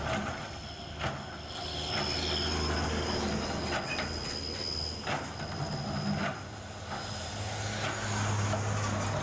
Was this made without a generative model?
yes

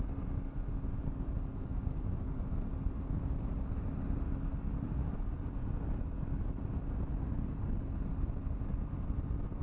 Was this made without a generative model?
yes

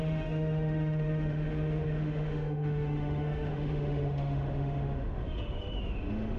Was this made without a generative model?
no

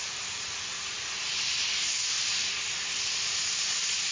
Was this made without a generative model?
yes